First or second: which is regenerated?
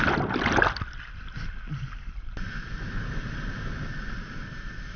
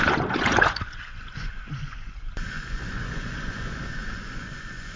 second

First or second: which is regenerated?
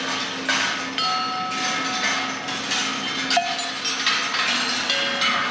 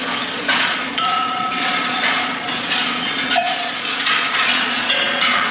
second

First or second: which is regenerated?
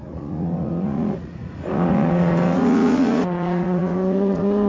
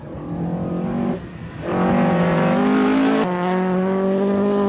first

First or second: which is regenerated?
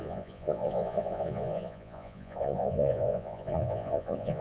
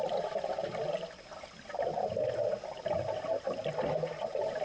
first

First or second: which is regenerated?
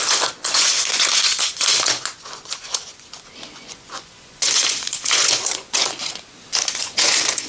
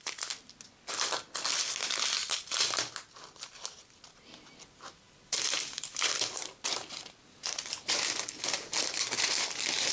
first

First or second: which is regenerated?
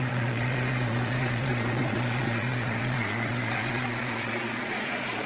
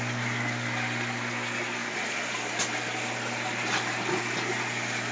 first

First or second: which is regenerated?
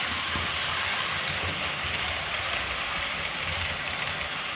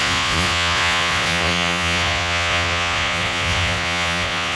second